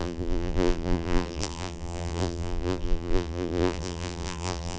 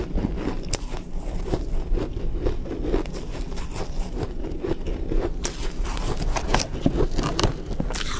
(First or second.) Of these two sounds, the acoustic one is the second